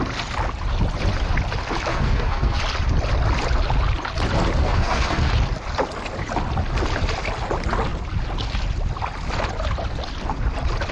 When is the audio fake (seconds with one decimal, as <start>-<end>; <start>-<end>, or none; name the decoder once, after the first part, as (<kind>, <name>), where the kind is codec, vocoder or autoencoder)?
1.9-2.6 (codec, SNAC); 4.6-5.3